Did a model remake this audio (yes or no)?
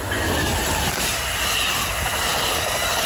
no